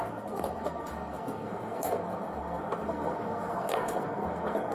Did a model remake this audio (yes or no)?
yes